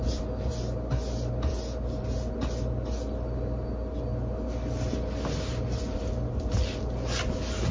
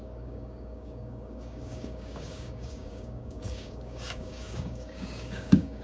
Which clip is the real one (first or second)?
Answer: first